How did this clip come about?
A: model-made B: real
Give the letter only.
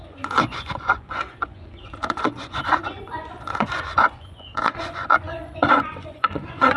A